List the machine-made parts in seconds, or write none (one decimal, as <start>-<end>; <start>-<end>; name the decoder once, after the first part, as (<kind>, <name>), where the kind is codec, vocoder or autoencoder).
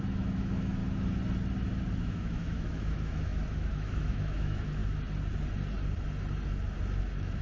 0.0-0.8 (autoencoder, DAC-VAE); 2.0-4.8; 7.0-7.4